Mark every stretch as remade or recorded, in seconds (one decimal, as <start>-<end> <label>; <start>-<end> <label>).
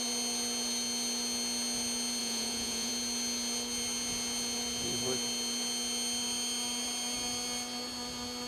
0.0-2.2 recorded; 2.2-2.9 remade; 2.9-8.5 recorded